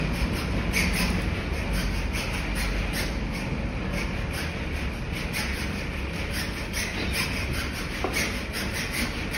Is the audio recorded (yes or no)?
yes